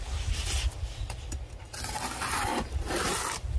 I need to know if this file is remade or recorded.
recorded